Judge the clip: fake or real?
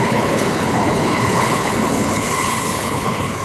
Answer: fake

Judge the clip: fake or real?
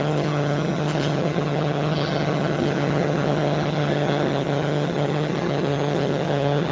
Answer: fake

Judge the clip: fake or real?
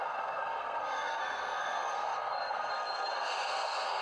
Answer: fake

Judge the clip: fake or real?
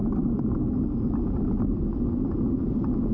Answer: real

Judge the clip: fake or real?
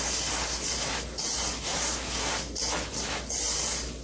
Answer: real